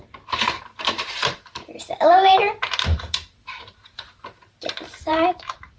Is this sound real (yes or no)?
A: no